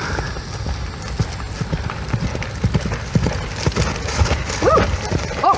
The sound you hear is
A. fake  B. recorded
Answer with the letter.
B